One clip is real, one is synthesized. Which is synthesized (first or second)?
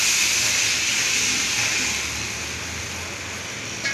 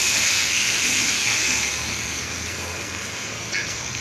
second